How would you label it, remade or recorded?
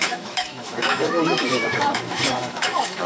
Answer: remade